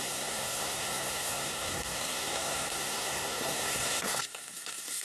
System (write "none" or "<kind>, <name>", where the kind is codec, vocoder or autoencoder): codec, SNAC